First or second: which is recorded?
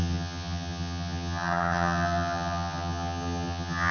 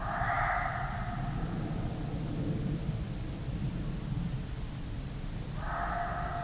second